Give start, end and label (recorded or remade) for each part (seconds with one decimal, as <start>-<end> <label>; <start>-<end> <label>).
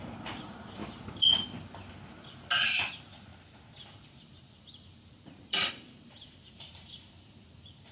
0.0-0.8 remade; 0.8-2.7 recorded; 2.7-7.9 remade